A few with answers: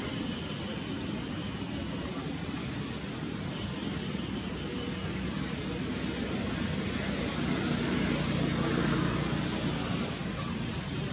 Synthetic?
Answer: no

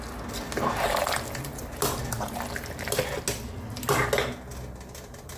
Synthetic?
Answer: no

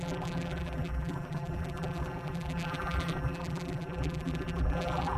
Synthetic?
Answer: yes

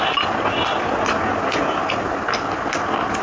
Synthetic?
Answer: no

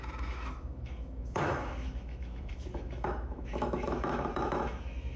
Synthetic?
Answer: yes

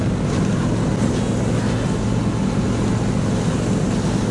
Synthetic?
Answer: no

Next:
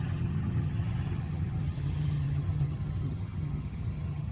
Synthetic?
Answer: yes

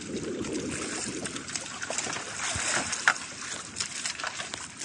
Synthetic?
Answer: no